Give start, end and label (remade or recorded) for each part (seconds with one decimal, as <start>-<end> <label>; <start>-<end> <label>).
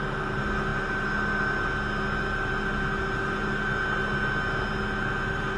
0.0-5.6 recorded